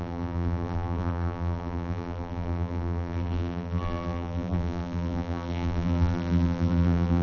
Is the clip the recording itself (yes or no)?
no